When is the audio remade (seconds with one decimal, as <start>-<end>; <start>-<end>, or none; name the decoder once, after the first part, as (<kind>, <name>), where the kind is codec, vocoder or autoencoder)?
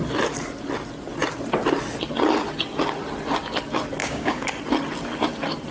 4.0-4.5 (codec, DAC)